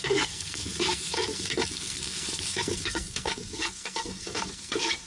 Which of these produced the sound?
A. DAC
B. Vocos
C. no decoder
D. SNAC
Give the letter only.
D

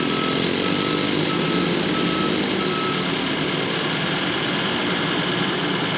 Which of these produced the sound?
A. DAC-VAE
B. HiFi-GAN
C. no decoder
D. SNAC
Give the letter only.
C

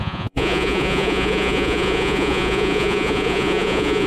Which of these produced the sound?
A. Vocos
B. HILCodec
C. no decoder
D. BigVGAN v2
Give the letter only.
A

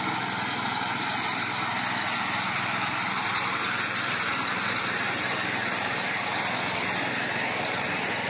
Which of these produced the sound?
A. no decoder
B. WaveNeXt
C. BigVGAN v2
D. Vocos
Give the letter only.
A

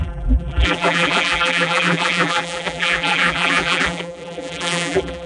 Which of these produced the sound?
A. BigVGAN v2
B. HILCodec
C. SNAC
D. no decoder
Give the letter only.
A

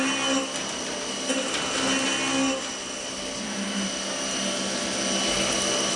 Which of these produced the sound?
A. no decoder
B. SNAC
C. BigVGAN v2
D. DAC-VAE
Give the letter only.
A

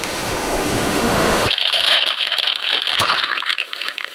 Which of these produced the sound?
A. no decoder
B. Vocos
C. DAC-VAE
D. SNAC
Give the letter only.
C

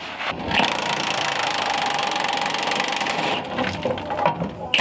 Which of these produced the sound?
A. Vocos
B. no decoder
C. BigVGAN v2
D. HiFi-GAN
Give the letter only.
B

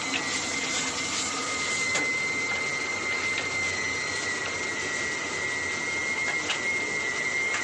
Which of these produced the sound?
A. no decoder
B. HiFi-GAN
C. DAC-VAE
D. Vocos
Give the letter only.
A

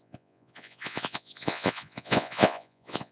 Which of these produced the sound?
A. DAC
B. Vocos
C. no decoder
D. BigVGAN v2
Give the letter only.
B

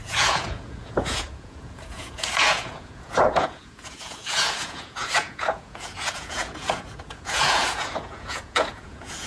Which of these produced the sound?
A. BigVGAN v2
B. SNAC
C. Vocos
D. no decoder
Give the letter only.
C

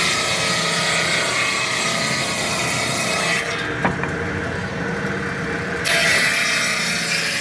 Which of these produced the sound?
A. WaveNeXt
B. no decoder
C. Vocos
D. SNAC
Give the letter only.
B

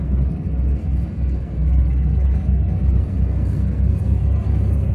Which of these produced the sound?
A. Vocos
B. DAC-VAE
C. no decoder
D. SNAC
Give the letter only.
D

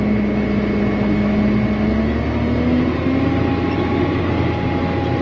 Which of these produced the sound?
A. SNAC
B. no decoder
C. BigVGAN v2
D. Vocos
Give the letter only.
B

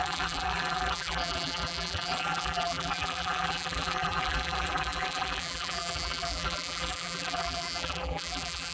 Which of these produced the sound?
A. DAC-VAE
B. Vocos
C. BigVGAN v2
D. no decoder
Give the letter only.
C